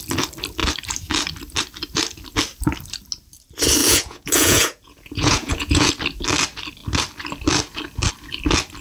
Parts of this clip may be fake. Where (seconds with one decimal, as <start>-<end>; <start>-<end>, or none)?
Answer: 3.8-5.9